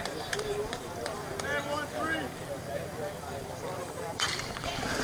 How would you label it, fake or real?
fake